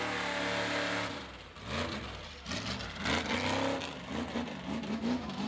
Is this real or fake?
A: real